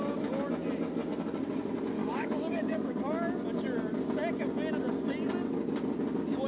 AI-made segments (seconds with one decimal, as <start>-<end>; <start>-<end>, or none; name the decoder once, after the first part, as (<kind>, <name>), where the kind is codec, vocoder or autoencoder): 2.0-3.0 (codec, DAC)